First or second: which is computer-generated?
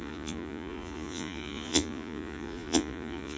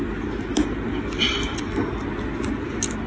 first